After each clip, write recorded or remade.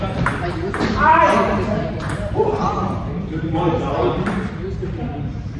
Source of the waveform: remade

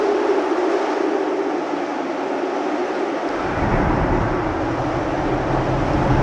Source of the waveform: recorded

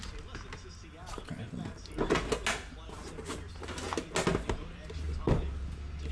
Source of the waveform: recorded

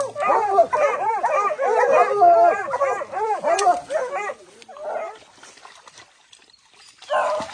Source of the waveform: recorded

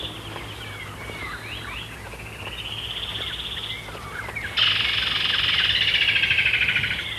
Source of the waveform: recorded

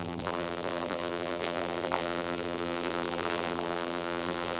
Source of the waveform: remade